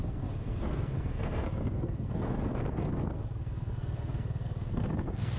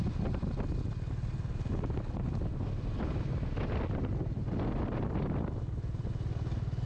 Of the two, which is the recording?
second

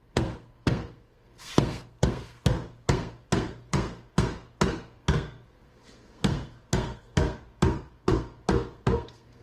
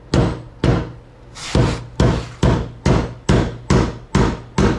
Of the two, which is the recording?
second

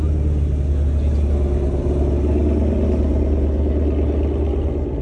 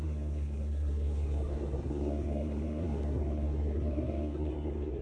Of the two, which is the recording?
first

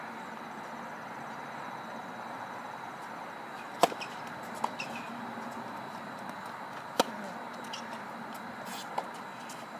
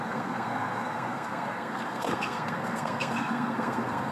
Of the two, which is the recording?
first